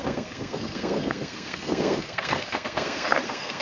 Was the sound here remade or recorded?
remade